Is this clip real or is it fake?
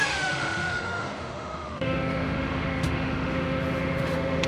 fake